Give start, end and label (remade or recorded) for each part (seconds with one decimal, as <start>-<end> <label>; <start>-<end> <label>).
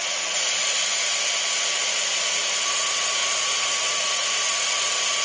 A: 0.0-1.0 remade; 1.0-2.7 recorded; 2.7-5.2 remade